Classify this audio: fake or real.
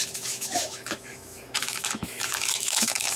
fake